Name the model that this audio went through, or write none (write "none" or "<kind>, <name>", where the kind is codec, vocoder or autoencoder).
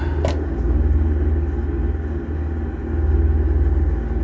none